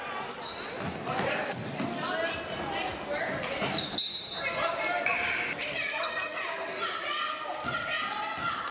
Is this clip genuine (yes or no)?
yes